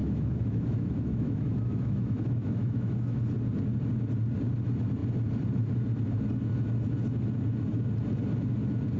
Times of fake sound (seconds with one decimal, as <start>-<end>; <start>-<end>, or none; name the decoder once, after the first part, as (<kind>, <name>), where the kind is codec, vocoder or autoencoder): 0.0-3.2 (autoencoder, DAC-VAE)